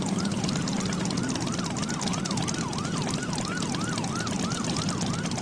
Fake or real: real